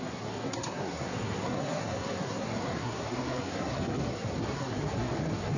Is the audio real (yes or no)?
no